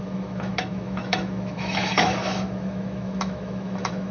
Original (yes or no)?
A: no